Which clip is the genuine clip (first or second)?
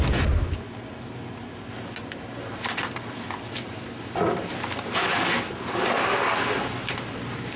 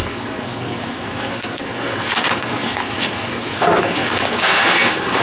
first